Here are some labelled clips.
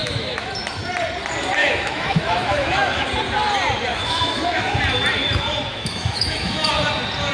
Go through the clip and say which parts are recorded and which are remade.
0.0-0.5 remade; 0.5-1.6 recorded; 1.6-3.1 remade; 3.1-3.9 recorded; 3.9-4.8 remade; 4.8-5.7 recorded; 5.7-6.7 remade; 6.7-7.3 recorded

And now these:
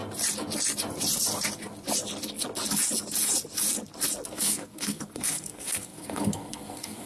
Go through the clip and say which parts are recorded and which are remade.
0.0-4.3 recorded; 4.3-7.1 remade

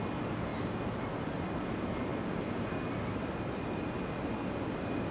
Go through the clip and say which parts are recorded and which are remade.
0.0-5.1 recorded

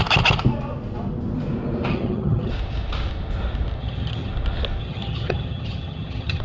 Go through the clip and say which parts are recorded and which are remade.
0.0-1.9 recorded; 1.9-2.5 remade; 2.5-3.8 recorded; 3.8-4.3 remade; 4.3-4.8 recorded; 4.8-6.4 remade

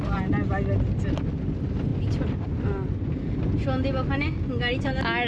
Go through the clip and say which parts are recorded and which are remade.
0.0-5.3 recorded

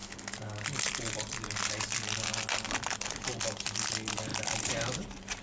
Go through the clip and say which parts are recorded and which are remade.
0.0-4.3 recorded; 4.3-5.4 remade